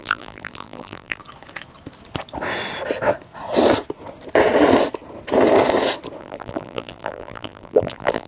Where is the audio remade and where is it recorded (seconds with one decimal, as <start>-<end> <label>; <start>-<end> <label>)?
0.0-1.2 remade; 1.2-6.2 recorded; 6.2-8.3 remade